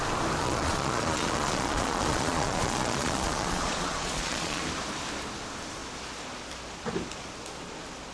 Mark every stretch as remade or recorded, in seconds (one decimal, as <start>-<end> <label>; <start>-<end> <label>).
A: 0.0-0.4 recorded; 0.4-4.6 remade; 4.6-8.1 recorded